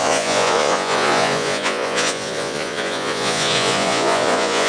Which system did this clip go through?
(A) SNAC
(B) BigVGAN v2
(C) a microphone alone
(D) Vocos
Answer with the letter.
D